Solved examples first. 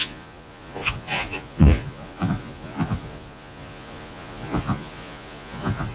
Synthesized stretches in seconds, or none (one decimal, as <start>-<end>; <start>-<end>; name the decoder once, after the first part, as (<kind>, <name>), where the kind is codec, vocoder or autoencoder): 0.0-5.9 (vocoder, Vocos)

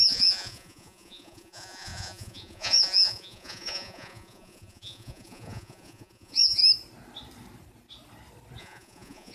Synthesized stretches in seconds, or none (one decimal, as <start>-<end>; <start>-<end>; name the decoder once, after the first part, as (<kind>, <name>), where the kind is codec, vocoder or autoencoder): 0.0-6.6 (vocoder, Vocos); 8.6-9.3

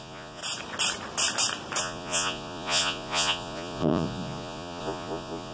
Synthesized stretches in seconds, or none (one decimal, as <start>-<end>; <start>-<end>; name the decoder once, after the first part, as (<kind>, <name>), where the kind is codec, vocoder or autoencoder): 0.0-0.4 (vocoder, Vocos); 1.8-5.5

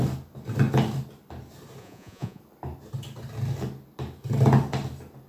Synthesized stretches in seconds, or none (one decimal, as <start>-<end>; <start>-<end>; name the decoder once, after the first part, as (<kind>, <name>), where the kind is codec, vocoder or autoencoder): 1.8-2.4 (vocoder, Vocos)